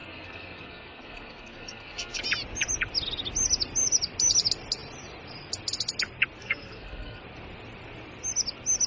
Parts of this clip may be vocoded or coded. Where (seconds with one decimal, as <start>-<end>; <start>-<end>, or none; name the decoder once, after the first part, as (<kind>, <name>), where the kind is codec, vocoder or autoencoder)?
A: 0.0-2.2 (codec, SNAC); 6.4-7.2